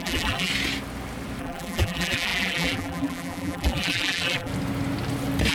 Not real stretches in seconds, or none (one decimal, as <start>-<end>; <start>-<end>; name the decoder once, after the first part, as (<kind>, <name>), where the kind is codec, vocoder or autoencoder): 0.0-0.5 (vocoder, BigVGAN v2); 1.4-4.5